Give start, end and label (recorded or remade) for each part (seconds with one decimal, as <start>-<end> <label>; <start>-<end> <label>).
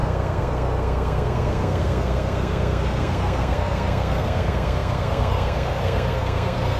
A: 0.0-6.8 remade